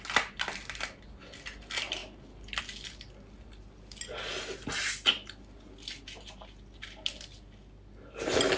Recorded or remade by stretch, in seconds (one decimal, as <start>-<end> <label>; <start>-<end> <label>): 0.0-8.6 recorded

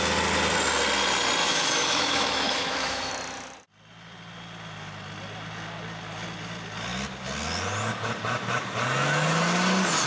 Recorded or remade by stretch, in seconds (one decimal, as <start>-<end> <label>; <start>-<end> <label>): 0.0-1.4 recorded; 1.4-3.1 remade; 3.1-10.1 recorded

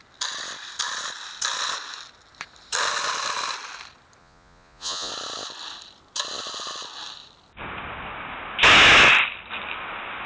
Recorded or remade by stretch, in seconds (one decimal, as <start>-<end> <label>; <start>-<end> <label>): 0.0-4.2 recorded; 4.2-5.1 remade; 5.1-10.3 recorded

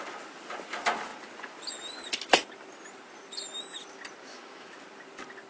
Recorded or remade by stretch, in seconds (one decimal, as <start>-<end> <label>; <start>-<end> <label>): 0.0-4.3 recorded; 4.3-4.8 remade; 4.8-5.5 recorded

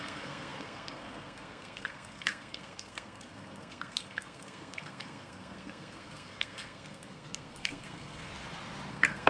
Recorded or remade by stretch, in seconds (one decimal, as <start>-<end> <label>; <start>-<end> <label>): 0.0-8.3 remade; 8.3-8.9 recorded; 8.9-9.3 remade

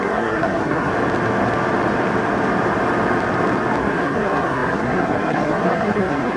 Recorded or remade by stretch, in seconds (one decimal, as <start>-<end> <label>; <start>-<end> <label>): 0.0-0.9 remade; 0.9-3.8 recorded; 3.8-6.4 remade